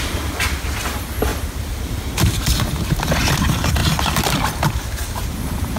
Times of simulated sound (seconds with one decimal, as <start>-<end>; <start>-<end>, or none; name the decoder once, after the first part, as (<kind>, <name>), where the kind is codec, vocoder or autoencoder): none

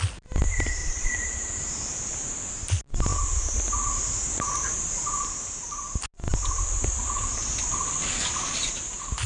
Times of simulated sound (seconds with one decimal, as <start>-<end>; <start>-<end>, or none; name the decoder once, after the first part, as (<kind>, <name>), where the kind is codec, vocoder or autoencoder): 0.8-2.1 (vocoder, BigVGAN v2)

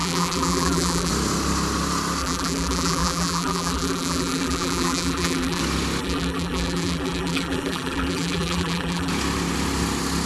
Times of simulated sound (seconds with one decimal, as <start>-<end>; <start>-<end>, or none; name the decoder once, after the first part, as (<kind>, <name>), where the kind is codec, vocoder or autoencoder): 0.0-1.1 (vocoder, BigVGAN v2); 2.2-5.6; 6.0-9.1